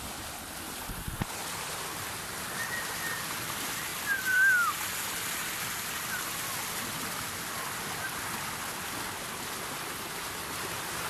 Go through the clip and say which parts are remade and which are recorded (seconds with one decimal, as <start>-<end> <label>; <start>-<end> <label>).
0.0-3.9 recorded; 3.9-7.7 remade; 7.7-11.1 recorded